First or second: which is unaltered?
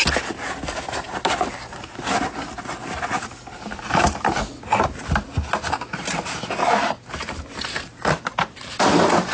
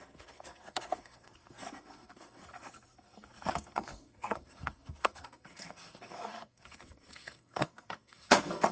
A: first